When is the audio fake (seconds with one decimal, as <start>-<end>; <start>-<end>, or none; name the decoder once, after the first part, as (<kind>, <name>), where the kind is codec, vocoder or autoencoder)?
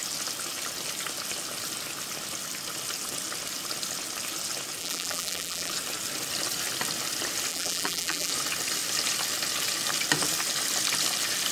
4.8-5.7 (vocoder, BigVGAN v2); 7.5-8.3